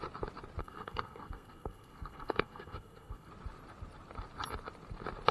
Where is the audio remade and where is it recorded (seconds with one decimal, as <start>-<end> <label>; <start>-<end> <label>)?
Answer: 0.0-0.6 recorded; 0.6-3.3 remade; 3.3-5.3 recorded